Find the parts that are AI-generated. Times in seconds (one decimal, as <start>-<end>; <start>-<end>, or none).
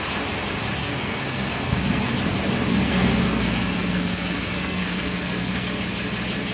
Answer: 0.8-2.1; 2.7-5.8